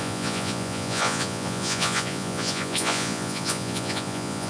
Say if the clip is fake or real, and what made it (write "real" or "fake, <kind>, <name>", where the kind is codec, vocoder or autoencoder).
fake, vocoder, Vocos